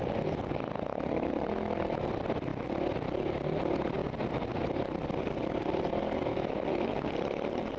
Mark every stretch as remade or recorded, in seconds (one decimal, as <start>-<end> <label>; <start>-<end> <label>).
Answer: 0.0-6.3 recorded; 6.3-7.1 remade; 7.1-7.8 recorded